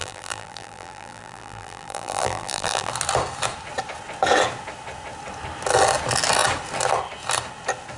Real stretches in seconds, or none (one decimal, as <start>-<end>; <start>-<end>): 2.9-8.0

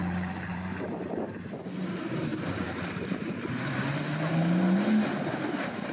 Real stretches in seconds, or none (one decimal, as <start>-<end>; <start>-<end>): 0.0-0.5; 1.4-2.3; 3.8-5.9

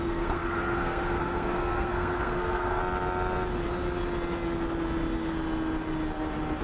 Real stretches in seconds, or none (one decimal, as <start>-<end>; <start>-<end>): 2.8-6.6